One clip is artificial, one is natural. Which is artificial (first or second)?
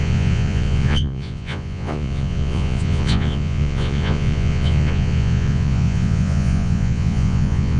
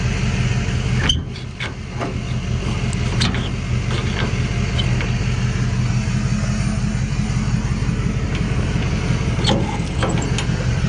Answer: first